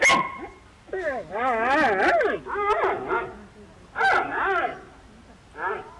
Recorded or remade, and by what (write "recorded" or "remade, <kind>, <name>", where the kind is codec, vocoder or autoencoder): recorded